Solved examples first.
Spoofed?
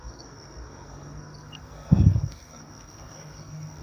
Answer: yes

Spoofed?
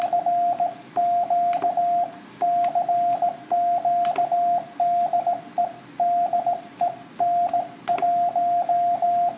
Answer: no